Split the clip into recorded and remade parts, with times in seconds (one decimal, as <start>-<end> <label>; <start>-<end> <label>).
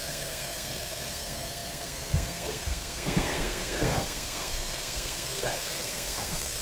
0.0-6.6 remade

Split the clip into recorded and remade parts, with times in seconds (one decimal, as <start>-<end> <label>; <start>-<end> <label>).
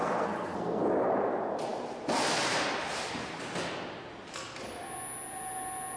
0.0-0.8 remade; 0.8-6.0 recorded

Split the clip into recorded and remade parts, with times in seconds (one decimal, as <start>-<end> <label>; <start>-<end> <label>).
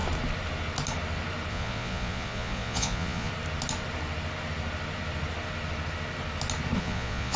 0.0-1.5 recorded; 1.5-3.3 remade; 3.3-6.8 recorded; 6.8-7.4 remade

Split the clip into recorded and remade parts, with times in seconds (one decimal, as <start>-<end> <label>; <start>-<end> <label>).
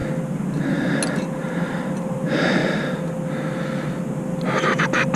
0.0-1.2 recorded; 1.2-2.6 remade; 2.6-4.8 recorded; 4.8-5.2 remade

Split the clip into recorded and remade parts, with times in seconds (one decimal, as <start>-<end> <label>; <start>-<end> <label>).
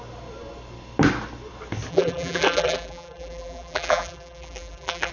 0.0-1.9 recorded; 1.9-5.1 remade